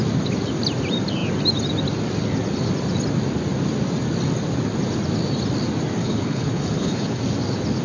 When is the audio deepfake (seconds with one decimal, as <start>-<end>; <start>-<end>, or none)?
6.0-7.2